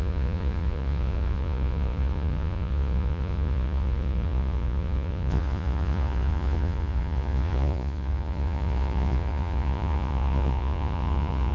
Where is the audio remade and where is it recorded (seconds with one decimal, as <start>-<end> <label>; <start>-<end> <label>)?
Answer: 0.0-11.5 remade